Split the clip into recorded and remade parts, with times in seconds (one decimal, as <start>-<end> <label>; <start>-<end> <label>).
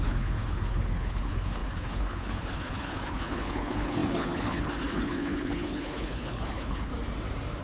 0.0-6.9 remade; 6.9-7.6 recorded